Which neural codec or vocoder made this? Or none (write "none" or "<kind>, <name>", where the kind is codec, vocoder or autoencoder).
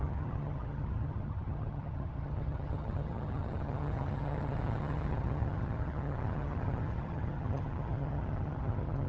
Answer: vocoder, HiFi-GAN